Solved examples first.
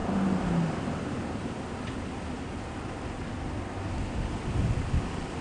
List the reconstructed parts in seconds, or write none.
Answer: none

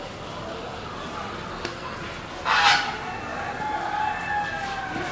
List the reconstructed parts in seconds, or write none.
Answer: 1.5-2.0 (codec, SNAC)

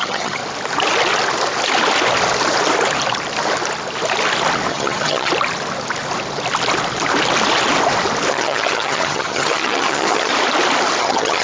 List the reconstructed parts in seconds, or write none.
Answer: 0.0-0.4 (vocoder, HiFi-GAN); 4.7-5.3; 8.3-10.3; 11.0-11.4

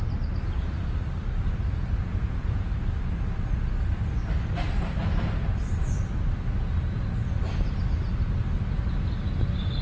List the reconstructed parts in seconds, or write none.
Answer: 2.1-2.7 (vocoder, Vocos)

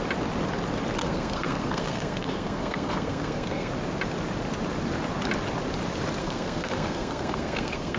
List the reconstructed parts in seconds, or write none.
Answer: 1.0-3.7 (codec, SNAC); 6.2-8.0

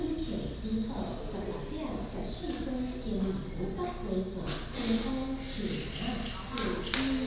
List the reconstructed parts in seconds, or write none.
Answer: none